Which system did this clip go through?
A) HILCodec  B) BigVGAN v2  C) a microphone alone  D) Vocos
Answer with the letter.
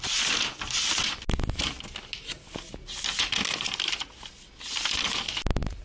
C